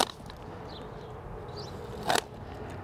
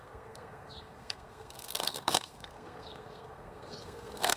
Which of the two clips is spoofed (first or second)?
second